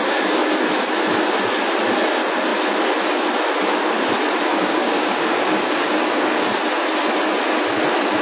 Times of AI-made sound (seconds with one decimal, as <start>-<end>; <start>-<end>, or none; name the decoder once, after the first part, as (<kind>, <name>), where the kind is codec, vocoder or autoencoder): 4.5-6.5 (codec, DAC)